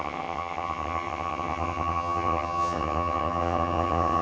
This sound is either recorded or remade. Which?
remade